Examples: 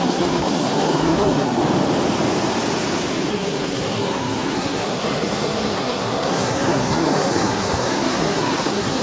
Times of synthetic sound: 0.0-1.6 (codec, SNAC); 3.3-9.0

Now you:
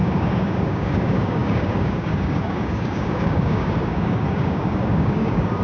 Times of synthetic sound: 0.0-5.6 (codec, DAC)

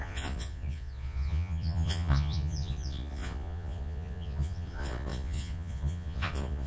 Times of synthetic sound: 0.0-6.7 (vocoder, Vocos)